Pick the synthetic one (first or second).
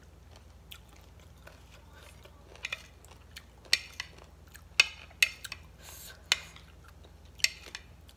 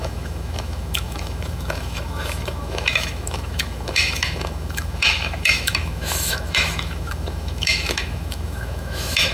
second